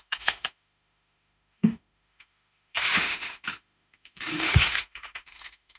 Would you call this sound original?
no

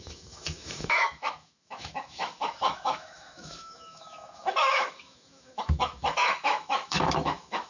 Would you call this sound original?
no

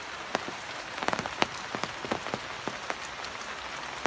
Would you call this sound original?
yes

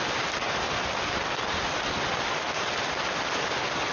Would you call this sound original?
yes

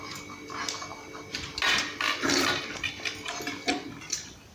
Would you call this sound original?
yes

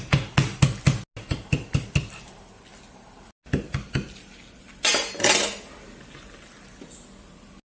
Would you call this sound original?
yes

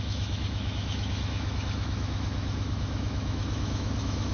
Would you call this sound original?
no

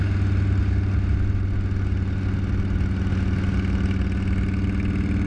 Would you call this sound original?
yes